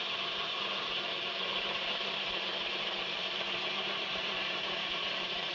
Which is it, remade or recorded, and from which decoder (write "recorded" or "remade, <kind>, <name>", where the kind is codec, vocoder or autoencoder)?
remade, vocoder, BigVGAN v2